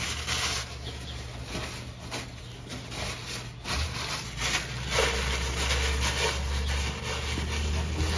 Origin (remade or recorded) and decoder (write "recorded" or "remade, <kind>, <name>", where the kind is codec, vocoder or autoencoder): recorded